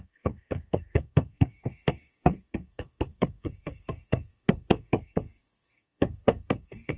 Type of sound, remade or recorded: remade